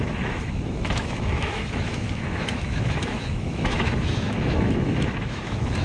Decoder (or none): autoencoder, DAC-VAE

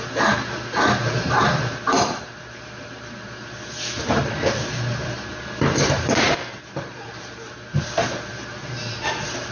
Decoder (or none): vocoder, BigVGAN v2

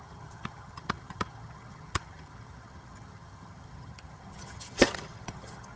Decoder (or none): vocoder, HiFi-GAN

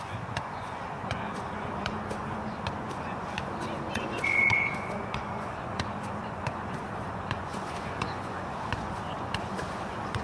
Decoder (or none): vocoder, Vocos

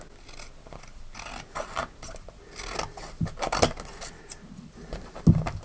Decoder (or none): none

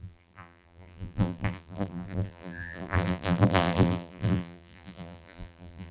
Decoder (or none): vocoder, BigVGAN v2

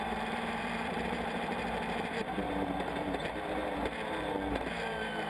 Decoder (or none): vocoder, BigVGAN v2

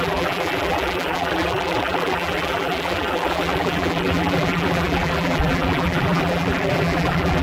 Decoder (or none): vocoder, BigVGAN v2